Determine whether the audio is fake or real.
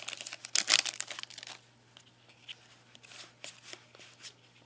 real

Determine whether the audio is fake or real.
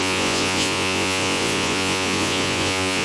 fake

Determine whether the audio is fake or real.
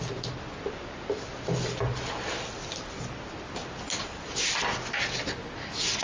real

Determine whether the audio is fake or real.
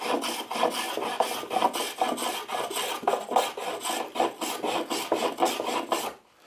real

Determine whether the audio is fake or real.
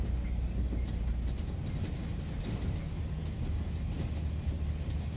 real